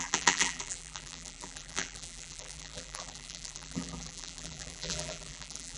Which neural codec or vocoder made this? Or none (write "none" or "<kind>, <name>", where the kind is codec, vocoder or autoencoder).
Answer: vocoder, BigVGAN v2